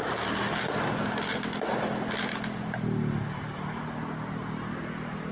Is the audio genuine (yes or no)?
yes